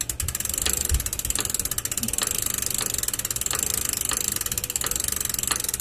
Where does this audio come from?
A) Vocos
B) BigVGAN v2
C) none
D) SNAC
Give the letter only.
C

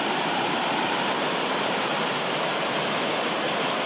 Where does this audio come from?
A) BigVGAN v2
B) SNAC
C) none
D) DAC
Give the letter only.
A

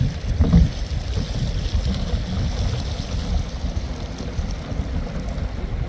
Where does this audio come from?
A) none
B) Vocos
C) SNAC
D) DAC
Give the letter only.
A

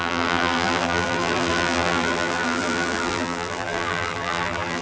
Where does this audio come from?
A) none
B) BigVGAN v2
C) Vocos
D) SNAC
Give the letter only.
B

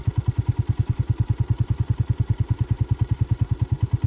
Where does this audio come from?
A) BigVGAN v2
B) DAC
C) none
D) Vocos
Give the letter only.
A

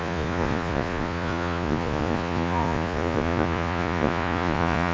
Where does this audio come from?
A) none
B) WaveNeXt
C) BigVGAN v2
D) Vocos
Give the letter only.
D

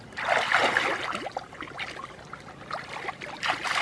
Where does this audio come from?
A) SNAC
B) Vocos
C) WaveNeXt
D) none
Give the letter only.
D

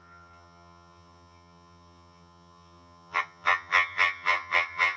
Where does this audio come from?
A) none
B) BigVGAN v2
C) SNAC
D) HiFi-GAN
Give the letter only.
D